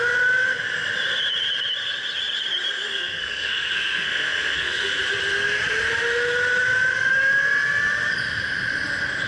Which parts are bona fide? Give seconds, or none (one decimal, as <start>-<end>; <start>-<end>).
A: 0.0-2.9; 5.0-9.3